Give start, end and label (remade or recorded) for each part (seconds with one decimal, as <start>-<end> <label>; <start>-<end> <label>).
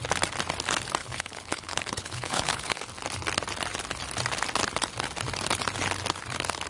0.0-1.0 recorded; 1.0-2.8 remade; 2.8-6.7 recorded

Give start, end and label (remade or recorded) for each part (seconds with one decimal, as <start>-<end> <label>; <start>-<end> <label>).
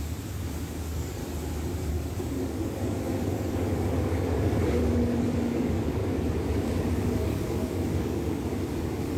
0.0-1.2 remade; 1.2-1.9 recorded; 1.9-6.0 remade; 6.0-6.5 recorded; 6.5-9.2 remade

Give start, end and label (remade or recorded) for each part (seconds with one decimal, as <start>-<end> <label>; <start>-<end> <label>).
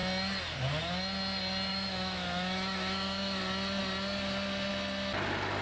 0.0-1.7 recorded; 1.7-3.4 remade; 3.4-5.6 recorded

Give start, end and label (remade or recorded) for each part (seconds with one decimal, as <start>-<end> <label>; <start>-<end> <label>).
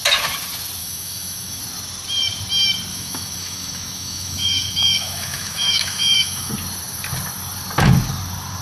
0.0-0.8 recorded; 0.8-1.6 remade; 1.6-2.9 recorded; 2.9-6.5 remade; 6.5-8.6 recorded